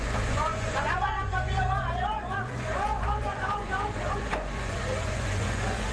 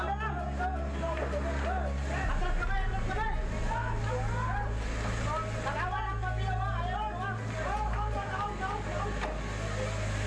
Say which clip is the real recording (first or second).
second